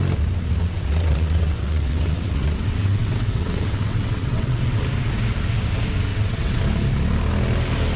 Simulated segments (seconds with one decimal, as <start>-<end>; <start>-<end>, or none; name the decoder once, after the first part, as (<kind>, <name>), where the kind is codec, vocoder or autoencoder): 0.6-4.8 (vocoder, WaveNeXt); 6.1-6.6